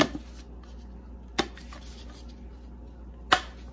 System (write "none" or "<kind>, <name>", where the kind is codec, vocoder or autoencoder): none